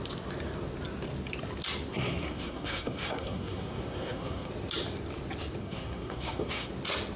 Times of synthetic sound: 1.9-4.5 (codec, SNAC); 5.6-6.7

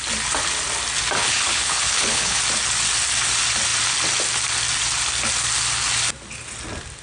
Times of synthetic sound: 1.2-2.4 (codec, HILCodec)

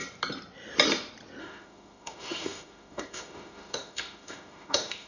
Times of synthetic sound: 1.4-5.1 (autoencoder, DAC-VAE)

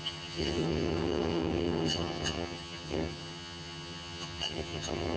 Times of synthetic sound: 0.0-5.2 (vocoder, HiFi-GAN)

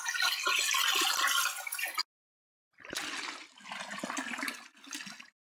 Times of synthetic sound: none

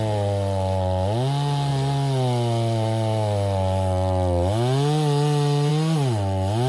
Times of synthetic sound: none

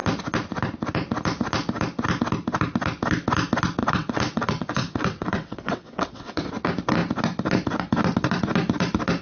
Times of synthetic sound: 3.8-6.5 (vocoder, WaveNeXt)

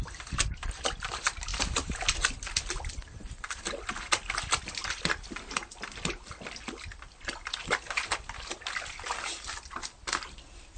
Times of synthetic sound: none